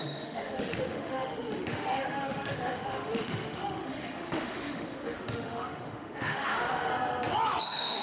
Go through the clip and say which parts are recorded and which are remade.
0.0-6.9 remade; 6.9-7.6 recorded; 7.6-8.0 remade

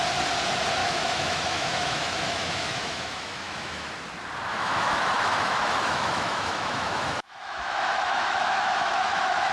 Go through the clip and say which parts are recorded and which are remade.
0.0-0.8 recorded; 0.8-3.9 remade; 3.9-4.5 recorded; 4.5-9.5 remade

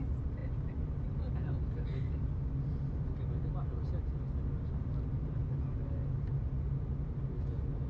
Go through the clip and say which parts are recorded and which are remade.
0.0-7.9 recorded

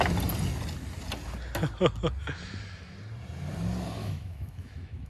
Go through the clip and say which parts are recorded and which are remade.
0.0-4.0 recorded; 4.0-5.1 remade

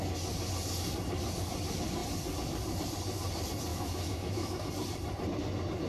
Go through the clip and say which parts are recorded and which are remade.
0.0-3.7 recorded; 3.7-4.7 remade; 4.7-5.9 recorded

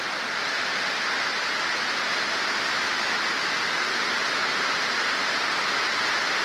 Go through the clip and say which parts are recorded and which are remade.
0.0-2.7 recorded; 2.7-3.2 remade; 3.2-6.4 recorded

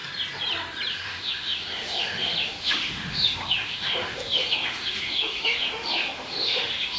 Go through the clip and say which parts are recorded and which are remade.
0.0-0.9 recorded; 0.9-7.0 remade